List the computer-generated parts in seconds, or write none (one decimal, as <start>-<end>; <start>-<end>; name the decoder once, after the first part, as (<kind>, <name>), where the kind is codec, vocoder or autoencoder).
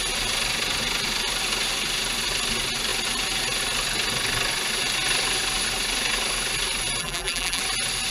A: 7.0-7.6 (vocoder, BigVGAN v2)